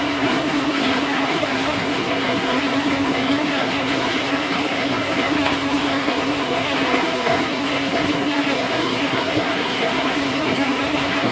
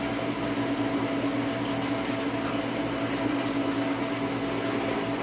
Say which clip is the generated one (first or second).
first